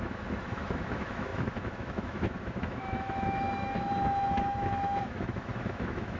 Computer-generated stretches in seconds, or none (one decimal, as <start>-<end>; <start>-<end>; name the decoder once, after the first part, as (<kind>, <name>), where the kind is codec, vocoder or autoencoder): 0.0-6.2 (autoencoder, DAC-VAE)